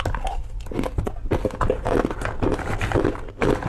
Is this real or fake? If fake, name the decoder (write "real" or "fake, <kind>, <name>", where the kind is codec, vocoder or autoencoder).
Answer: real